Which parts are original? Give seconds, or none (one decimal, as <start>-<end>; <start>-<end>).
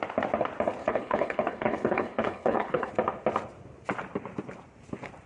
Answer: 0.0-0.8; 2.9-5.3